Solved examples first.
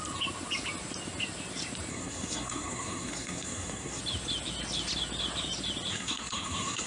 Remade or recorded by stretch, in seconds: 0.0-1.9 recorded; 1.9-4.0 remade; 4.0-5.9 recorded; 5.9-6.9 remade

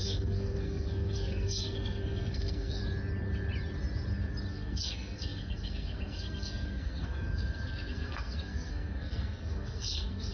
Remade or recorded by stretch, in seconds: 0.0-2.8 remade; 2.8-4.5 recorded; 4.5-10.3 remade

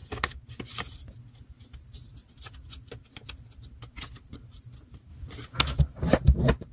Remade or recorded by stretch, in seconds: 0.0-3.9 recorded; 3.9-5.1 remade; 5.1-5.8 recorded; 5.8-6.7 remade

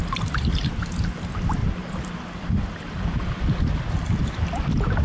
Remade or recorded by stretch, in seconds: 0.0-0.8 remade; 0.8-1.6 recorded; 1.6-4.6 remade; 4.6-5.0 recorded

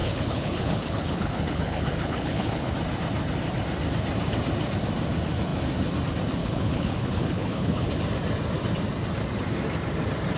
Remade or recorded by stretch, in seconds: 0.0-2.7 remade; 2.7-6.4 recorded; 6.4-7.9 remade; 7.9-10.4 recorded

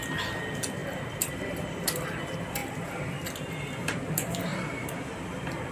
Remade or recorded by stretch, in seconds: 0.0-5.7 recorded

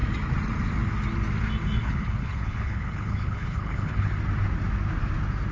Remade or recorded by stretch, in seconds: 0.0-1.8 recorded; 1.8-4.1 remade; 4.1-5.5 recorded

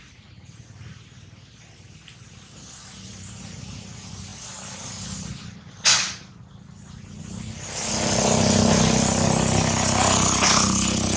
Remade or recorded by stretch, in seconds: 0.0-11.2 recorded